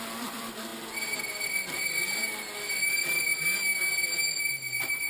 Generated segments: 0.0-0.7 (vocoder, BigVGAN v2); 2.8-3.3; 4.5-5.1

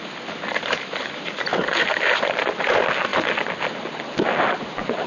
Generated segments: 0.0-1.5 (vocoder, BigVGAN v2); 2.2-5.1